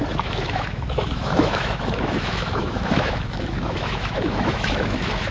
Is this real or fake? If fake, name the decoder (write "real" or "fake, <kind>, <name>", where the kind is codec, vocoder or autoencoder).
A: fake, autoencoder, DAC-VAE